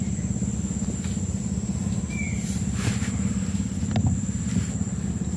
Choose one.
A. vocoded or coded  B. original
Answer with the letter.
B